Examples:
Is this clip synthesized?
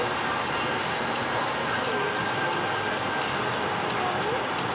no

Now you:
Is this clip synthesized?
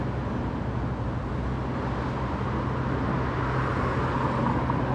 no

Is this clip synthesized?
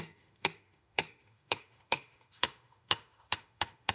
yes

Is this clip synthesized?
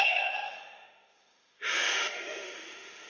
yes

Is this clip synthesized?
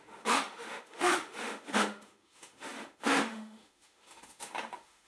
yes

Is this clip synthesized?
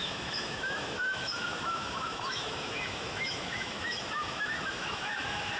yes